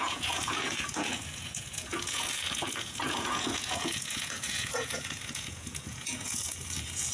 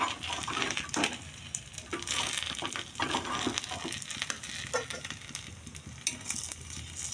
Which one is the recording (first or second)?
second